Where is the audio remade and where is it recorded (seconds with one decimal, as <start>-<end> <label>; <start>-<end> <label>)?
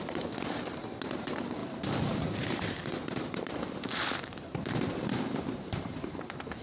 0.0-6.6 remade